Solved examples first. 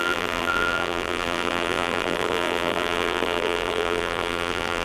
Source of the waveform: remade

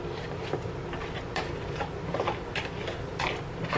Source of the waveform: recorded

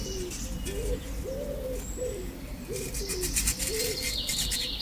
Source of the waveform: recorded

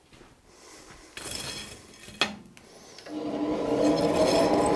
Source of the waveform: recorded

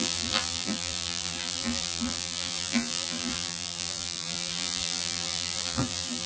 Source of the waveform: remade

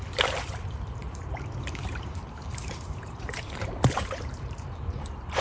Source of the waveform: remade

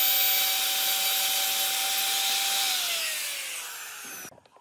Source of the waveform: recorded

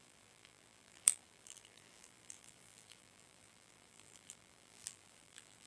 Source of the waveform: remade